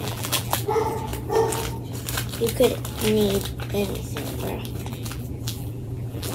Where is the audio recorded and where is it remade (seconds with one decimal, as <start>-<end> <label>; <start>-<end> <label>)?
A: 0.0-1.1 remade; 1.1-4.9 recorded; 4.9-6.3 remade